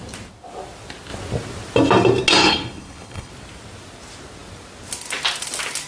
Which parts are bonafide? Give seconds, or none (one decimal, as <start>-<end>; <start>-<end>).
0.0-2.4; 3.3-5.9